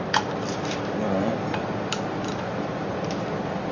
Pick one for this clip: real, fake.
real